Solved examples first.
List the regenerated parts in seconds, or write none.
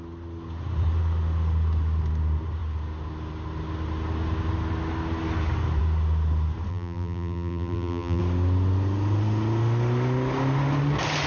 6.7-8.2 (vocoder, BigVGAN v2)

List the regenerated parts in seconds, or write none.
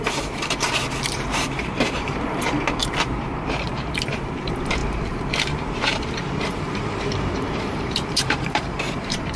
0.0-9.4 (vocoder, BigVGAN v2)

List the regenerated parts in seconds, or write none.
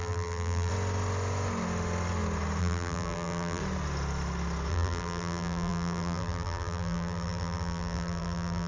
0.0-0.7 (vocoder, BigVGAN v2); 2.6-3.6; 4.7-8.7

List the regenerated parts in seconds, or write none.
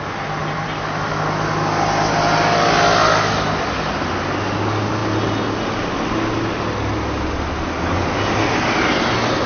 0.4-1.1 (vocoder, BigVGAN v2)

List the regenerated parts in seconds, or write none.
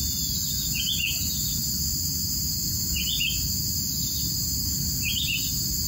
none